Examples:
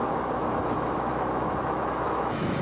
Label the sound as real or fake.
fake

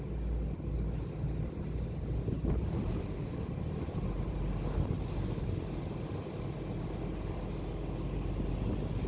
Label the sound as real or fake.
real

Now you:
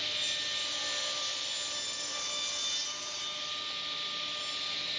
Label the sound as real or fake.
real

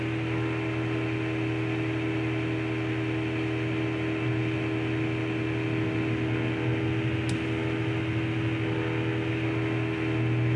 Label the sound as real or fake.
real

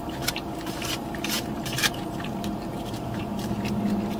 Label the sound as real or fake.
fake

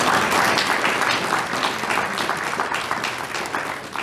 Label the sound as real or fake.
real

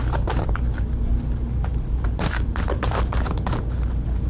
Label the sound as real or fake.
real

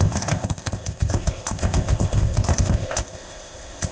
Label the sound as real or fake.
fake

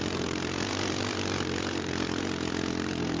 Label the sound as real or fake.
fake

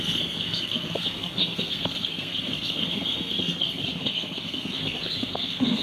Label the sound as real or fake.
fake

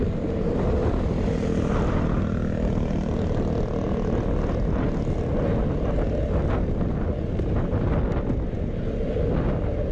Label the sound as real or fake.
real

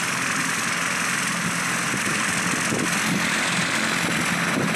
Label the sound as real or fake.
real